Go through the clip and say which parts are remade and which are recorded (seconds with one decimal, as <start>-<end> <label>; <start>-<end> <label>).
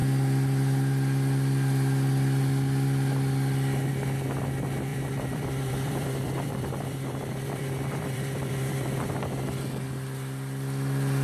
0.0-4.9 recorded; 4.9-9.1 remade; 9.1-11.2 recorded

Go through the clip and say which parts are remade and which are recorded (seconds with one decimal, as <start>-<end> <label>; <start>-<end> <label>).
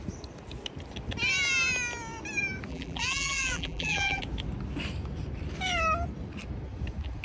0.0-2.7 recorded; 2.7-4.2 remade; 4.2-7.2 recorded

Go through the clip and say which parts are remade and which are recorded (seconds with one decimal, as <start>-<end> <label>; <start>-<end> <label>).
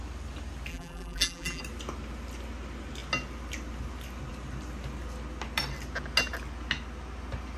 0.0-0.7 recorded; 0.7-1.6 remade; 1.6-7.6 recorded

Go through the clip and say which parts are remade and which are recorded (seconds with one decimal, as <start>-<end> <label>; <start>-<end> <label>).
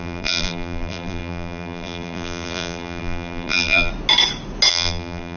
0.0-3.9 remade; 3.9-4.7 recorded; 4.7-5.4 remade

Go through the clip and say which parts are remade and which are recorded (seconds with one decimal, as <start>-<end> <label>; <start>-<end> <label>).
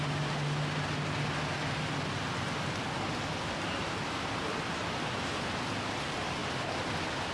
0.0-3.8 recorded; 3.8-4.7 remade; 4.7-6.4 recorded; 6.4-7.3 remade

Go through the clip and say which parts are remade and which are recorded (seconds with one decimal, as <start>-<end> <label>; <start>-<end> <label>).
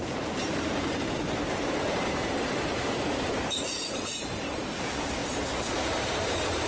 0.0-6.7 remade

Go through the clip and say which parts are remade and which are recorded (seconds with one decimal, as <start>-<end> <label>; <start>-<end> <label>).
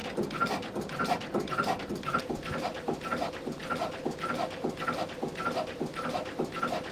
0.0-6.9 recorded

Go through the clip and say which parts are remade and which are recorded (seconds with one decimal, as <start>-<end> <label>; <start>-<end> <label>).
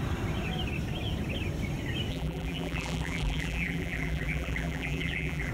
0.0-2.1 recorded; 2.1-5.5 remade